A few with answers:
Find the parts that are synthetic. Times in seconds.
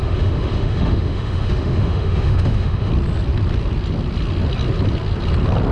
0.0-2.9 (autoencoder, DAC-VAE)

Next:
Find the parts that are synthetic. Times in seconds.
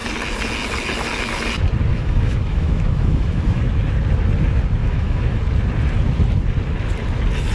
1.9-3.6 (autoencoder, DAC-VAE); 4.8-5.4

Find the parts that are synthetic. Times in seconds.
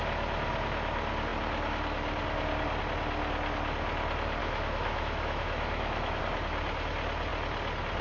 4.4-6.2 (autoencoder, DAC-VAE)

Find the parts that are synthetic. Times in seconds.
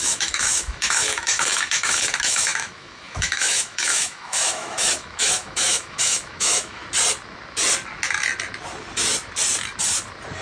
0.0-6.8 (autoencoder, DAC-VAE)